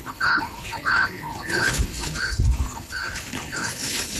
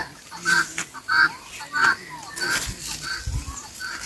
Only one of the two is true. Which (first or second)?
second